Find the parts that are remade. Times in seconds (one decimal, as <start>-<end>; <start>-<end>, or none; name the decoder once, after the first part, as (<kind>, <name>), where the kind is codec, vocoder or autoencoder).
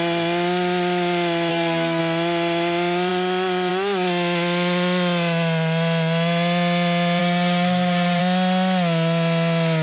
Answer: 1.5-2.0 (codec, SNAC); 7.2-8.2